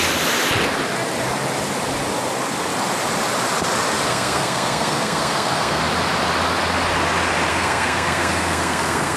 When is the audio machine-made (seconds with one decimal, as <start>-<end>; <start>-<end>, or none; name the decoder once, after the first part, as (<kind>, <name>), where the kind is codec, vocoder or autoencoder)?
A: 4.1-5.8 (codec, SNAC); 7.5-9.2